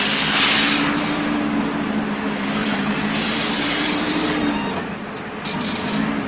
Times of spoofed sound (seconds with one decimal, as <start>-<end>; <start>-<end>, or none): 2.6-4.5